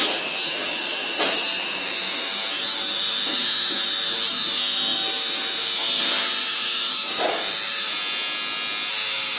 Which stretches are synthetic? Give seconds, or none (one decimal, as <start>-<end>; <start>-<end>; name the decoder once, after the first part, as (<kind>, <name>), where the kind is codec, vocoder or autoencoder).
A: 0.0-7.9 (autoencoder, DAC-VAE); 8.9-9.4